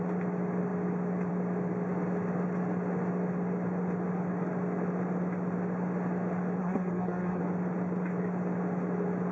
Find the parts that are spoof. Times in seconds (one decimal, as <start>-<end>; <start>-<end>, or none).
6.6-7.4